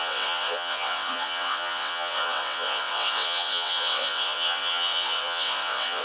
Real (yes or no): no